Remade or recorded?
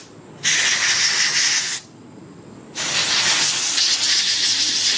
recorded